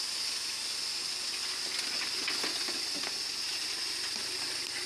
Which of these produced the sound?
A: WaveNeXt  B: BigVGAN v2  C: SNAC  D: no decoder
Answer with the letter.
D